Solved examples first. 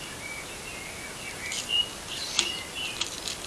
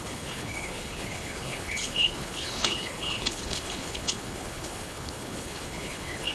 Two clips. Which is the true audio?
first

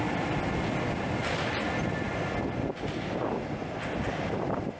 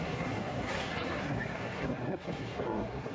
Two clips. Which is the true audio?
first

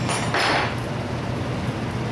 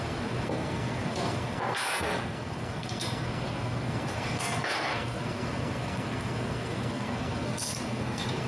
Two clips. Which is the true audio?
first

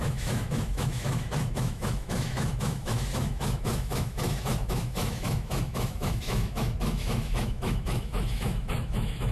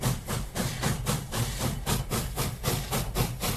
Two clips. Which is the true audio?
second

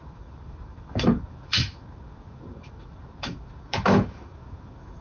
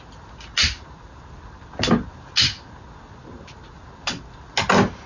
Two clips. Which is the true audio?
second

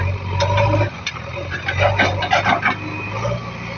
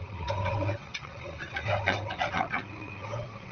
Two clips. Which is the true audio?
first